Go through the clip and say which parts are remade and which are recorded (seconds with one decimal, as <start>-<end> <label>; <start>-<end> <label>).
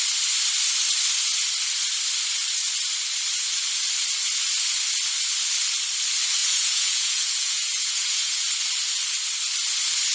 0.0-6.4 recorded; 6.4-8.4 remade; 8.4-10.1 recorded